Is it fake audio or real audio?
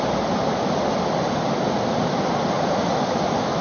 real